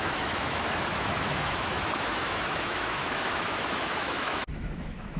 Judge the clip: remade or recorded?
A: remade